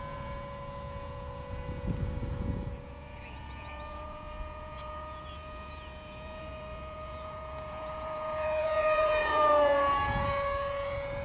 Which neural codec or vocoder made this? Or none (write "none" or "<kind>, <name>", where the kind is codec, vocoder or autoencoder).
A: vocoder, Vocos